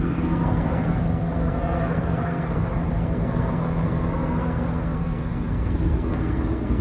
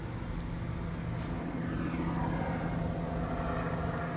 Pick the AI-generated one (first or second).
first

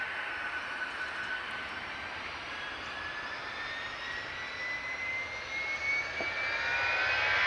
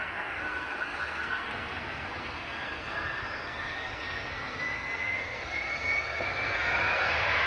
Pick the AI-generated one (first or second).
second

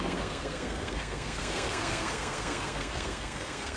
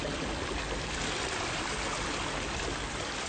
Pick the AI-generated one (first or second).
first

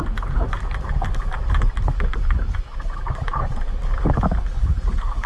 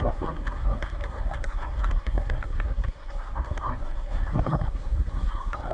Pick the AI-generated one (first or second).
second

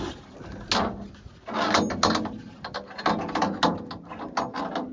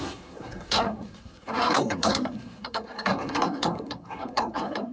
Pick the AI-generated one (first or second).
second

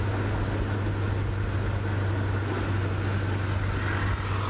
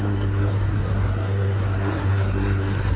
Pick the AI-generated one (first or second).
second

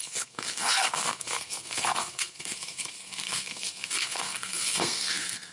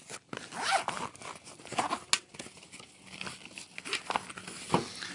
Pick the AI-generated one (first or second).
first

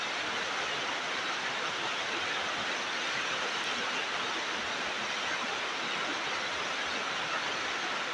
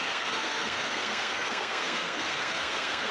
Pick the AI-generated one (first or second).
second